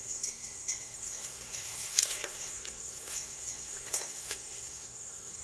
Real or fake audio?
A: fake